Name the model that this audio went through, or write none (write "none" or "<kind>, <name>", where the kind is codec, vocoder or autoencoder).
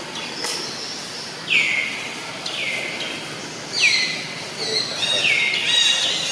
none